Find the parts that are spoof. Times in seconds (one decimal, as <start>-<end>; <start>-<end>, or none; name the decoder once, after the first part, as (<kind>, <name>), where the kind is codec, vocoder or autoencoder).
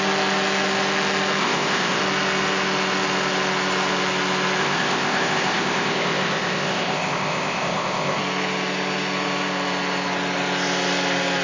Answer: 1.4-2.0 (codec, ZipCodec); 4.6-8.2